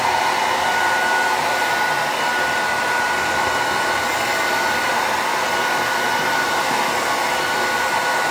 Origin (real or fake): real